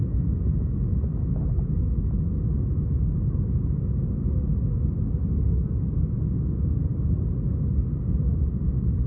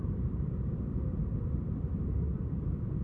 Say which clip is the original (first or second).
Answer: first